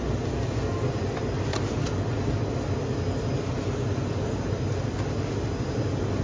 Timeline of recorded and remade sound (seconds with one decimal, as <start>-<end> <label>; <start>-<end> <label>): 0.0-6.2 recorded